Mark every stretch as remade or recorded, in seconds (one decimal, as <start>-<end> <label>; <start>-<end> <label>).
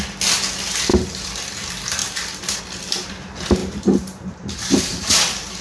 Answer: 0.0-3.6 recorded; 3.6-5.6 remade